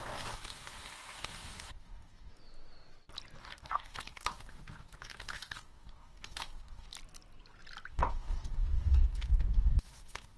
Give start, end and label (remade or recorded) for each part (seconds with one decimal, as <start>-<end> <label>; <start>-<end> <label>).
0.0-2.3 remade; 2.3-3.4 recorded; 3.4-6.9 remade; 6.9-7.9 recorded; 7.9-10.4 remade